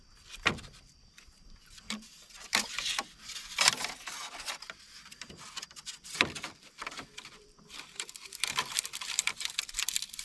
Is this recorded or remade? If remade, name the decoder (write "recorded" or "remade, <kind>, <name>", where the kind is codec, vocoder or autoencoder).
remade, vocoder, BigVGAN v2